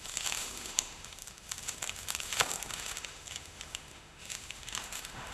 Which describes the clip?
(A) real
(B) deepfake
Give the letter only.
B